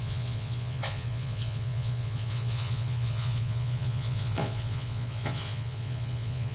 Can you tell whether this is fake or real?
fake